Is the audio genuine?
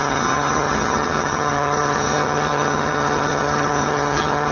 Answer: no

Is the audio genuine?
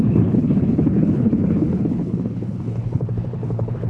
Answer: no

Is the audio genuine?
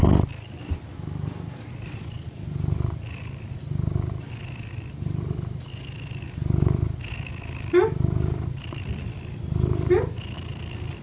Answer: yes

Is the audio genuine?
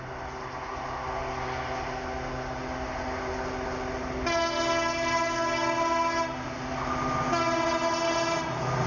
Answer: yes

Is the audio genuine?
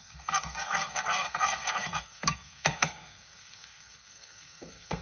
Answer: no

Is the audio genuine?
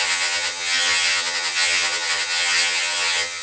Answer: no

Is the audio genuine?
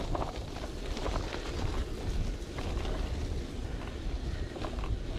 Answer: yes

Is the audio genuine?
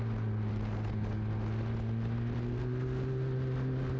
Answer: yes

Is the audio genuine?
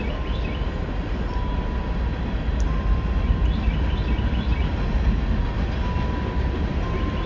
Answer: yes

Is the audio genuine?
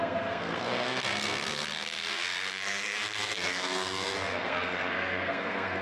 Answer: no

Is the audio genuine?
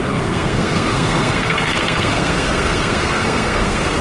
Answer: no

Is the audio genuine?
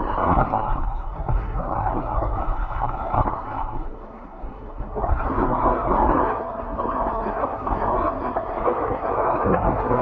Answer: no